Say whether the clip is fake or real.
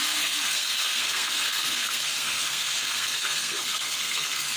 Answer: fake